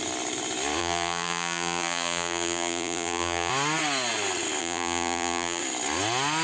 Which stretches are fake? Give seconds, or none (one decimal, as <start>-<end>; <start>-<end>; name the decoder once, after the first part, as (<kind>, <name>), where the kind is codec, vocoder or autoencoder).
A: 0.8-3.5 (vocoder, BigVGAN v2); 4.6-5.6